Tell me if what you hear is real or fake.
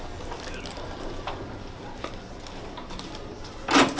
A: real